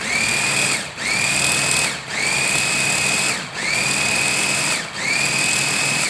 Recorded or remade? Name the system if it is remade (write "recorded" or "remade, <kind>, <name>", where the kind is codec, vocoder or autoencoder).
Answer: recorded